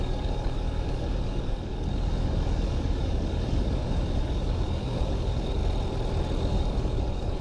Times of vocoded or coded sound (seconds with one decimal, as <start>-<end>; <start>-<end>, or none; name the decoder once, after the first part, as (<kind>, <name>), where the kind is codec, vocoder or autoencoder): 0.0-5.6 (codec, DAC); 6.4-7.4